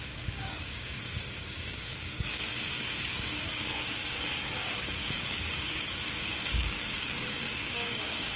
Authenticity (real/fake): fake